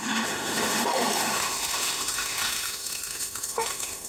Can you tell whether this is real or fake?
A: fake